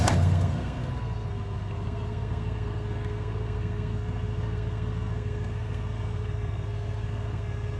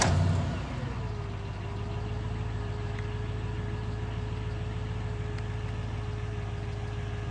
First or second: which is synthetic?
first